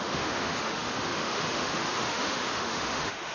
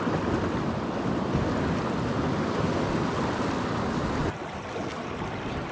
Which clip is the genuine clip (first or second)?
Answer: second